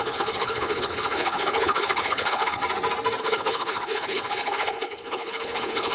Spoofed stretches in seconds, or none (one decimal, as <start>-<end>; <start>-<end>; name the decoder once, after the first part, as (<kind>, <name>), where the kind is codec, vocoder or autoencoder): 0.0-2.6 (codec, HILCodec); 3.2-5.9